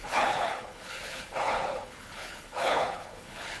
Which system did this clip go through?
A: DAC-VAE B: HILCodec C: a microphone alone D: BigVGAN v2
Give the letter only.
B